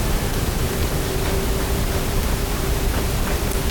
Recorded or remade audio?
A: remade